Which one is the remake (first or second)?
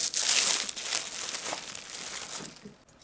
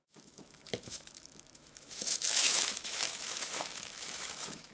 second